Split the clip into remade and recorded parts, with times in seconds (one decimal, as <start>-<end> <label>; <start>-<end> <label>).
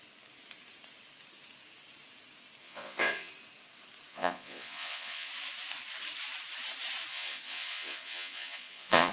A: 0.0-2.6 recorded; 2.6-3.3 remade; 3.3-4.1 recorded; 4.1-5.3 remade; 5.3-7.1 recorded; 7.1-9.1 remade